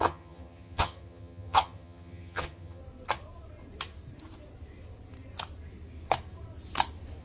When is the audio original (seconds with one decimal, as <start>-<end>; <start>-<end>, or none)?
2.8-7.2